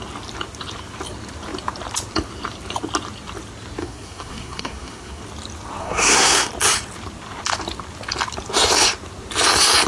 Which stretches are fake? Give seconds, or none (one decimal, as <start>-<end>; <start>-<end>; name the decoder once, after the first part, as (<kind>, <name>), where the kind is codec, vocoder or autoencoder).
3.8-5.2 (codec, SNAC); 5.8-6.5